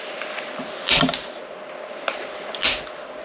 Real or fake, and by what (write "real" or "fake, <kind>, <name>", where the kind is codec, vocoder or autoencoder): real